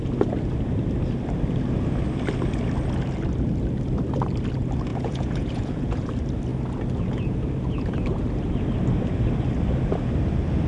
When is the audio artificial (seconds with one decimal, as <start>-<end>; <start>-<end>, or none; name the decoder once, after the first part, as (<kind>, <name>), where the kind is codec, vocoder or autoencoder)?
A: 4.9-6.0 (vocoder, Vocos)